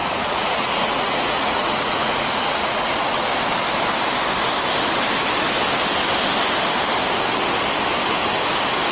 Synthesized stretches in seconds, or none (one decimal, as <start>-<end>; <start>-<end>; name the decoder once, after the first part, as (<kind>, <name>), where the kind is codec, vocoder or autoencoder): 0.0-3.3 (vocoder, Vocos)